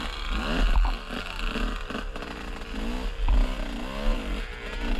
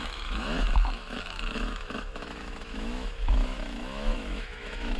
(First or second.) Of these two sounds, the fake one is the second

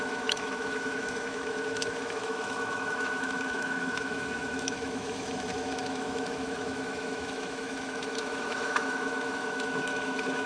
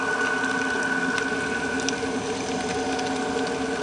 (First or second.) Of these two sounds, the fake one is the first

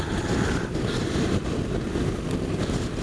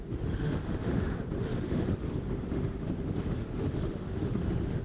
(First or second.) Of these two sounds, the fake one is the second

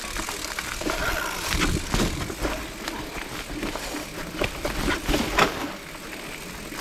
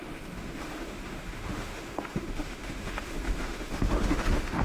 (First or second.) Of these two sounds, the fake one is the second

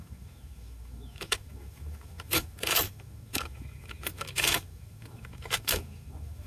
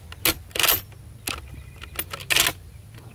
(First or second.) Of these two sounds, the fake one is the first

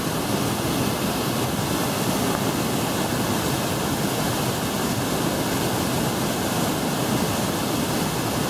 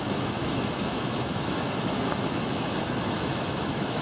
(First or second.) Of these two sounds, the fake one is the second